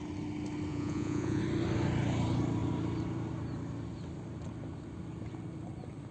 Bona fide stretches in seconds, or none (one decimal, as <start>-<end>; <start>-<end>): 0.0-0.7; 1.4-6.1

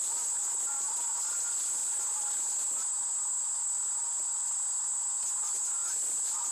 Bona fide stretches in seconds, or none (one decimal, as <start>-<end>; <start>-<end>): 0.0-6.5

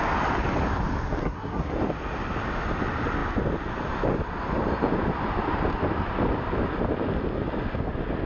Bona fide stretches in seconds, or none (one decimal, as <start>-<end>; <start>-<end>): 0.0-1.2; 1.8-8.3

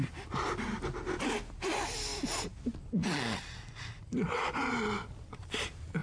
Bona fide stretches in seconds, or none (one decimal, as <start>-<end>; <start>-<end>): 0.0-6.0